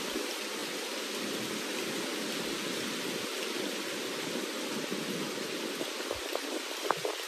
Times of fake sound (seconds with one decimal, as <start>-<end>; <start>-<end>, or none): none

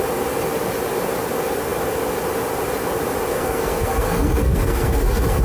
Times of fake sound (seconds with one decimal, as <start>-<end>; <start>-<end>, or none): 3.3-5.4

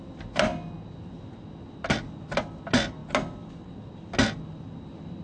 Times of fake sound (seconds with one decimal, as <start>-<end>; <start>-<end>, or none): none

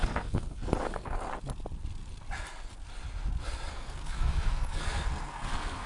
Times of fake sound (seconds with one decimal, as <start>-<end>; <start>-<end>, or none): 0.0-1.3; 3.7-5.9

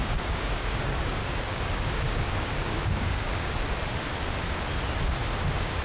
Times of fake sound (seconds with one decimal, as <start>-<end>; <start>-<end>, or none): 0.0-3.5